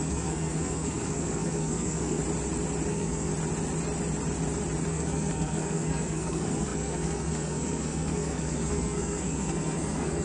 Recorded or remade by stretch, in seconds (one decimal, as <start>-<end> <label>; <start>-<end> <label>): 0.0-2.2 remade; 2.2-2.9 recorded; 2.9-3.3 remade; 3.3-4.9 recorded; 4.9-10.2 remade